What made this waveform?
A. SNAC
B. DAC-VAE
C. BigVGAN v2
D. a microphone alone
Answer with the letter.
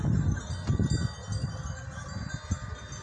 D